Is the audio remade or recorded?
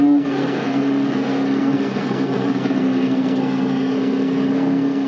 remade